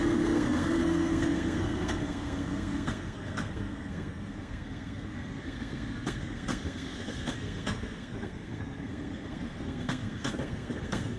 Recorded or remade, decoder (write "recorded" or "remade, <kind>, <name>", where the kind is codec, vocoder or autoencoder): remade, codec, SNAC